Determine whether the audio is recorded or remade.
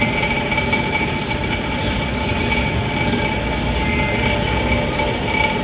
recorded